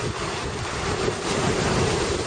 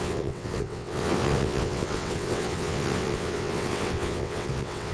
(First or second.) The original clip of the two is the first